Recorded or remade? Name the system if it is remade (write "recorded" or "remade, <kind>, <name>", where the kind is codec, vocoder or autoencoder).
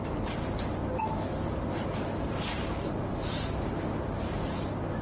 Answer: recorded